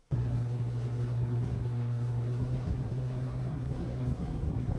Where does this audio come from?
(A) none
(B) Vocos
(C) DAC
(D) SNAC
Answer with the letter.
D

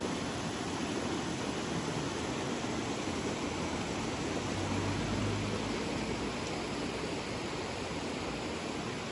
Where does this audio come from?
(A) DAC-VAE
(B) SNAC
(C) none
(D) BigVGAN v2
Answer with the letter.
C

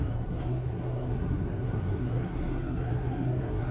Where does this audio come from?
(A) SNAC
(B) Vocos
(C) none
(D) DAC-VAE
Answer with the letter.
A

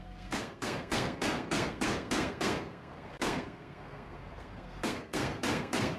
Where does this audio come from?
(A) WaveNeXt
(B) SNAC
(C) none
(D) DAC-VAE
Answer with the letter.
B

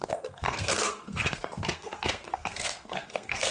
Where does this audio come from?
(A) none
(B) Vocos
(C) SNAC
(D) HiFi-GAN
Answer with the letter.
C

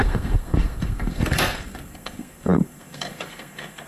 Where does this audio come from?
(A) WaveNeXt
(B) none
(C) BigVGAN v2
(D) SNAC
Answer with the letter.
D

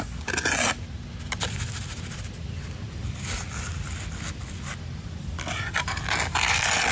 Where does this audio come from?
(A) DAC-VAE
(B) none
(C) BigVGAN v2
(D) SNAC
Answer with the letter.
B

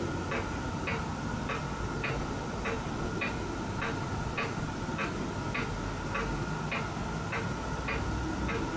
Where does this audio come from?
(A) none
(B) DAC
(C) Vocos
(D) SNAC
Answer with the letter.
A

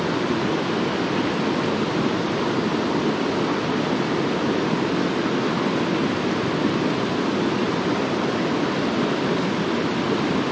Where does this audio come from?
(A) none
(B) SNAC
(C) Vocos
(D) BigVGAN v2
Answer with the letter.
A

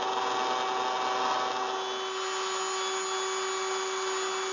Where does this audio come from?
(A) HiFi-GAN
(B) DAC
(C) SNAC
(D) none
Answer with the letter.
D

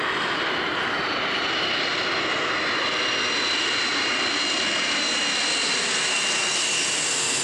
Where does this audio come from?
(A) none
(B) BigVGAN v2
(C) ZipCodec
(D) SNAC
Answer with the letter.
A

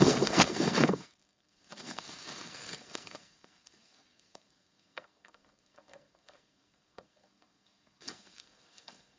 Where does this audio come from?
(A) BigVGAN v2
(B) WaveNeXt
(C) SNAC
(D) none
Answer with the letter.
C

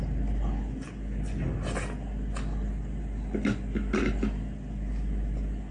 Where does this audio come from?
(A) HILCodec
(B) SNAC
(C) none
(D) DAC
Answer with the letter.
C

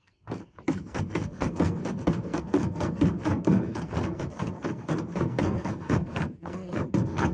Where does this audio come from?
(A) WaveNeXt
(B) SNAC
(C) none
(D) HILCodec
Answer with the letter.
B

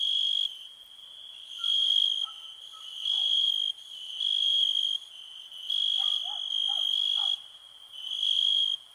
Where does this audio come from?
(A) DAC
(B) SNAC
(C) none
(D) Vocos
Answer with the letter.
C